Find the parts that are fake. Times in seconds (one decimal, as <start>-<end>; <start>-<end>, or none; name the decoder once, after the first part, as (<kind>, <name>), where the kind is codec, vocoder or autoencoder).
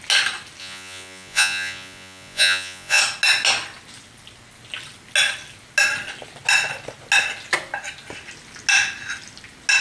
0.6-3.0 (vocoder, Vocos)